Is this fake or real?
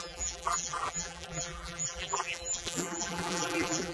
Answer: fake